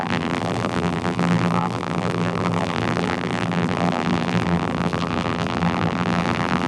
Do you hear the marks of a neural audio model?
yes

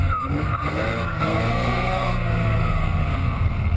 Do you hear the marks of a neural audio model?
yes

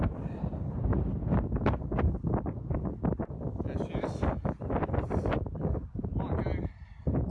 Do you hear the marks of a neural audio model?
no